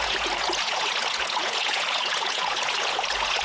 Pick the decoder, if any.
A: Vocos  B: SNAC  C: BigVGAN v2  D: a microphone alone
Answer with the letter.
A